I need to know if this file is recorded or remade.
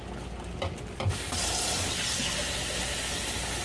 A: recorded